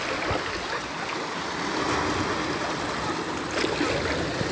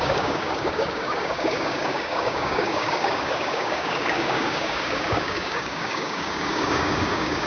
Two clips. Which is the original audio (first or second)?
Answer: first